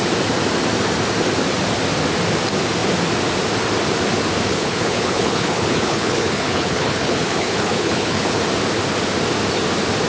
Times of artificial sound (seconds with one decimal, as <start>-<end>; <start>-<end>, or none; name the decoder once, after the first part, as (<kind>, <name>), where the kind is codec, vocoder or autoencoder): 4.5-8.4 (codec, HILCodec)

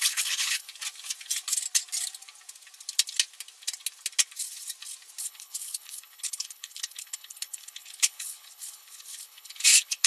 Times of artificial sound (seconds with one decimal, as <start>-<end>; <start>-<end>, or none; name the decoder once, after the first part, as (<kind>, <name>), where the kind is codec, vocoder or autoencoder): 0.0-0.7 (codec, HILCodec); 5.2-10.1

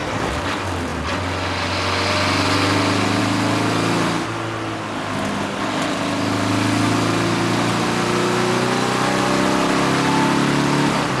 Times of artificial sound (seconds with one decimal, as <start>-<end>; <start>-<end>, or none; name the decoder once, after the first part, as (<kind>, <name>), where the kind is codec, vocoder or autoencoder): none